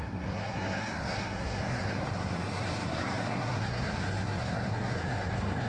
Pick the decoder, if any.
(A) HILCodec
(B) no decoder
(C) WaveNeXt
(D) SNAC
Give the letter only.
D